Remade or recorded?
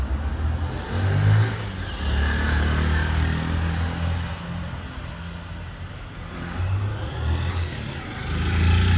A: recorded